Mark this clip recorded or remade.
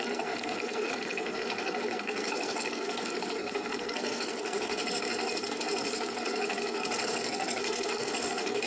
remade